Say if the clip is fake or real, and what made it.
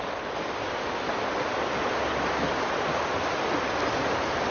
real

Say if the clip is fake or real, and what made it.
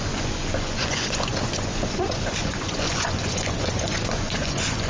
fake, vocoder, Vocos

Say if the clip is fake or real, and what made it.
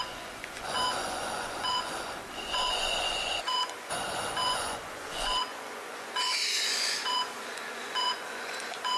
fake, vocoder, Vocos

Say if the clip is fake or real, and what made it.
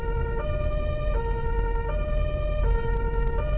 real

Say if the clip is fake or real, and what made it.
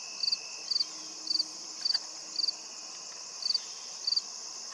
real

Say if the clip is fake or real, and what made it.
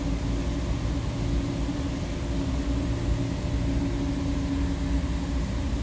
real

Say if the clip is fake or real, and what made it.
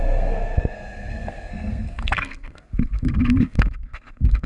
fake, codec, SNAC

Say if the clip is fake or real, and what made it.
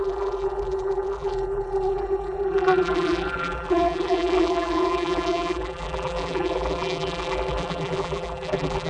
fake, vocoder, BigVGAN v2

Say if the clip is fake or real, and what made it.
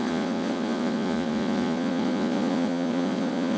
fake, vocoder, Vocos